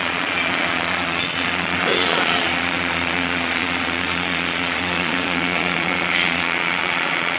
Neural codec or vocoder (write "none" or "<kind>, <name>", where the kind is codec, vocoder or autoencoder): vocoder, Vocos